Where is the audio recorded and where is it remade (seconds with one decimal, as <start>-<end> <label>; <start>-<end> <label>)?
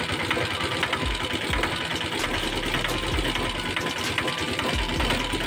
0.0-5.5 recorded